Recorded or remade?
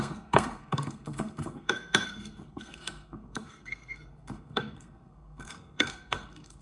remade